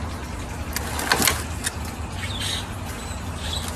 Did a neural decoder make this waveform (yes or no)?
no